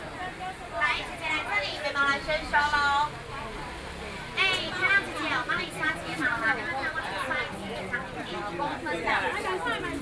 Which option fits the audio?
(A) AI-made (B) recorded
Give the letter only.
B